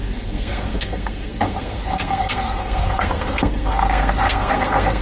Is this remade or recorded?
remade